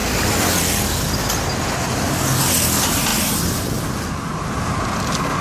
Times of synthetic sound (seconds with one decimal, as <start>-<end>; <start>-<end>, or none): none